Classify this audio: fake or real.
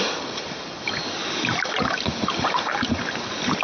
real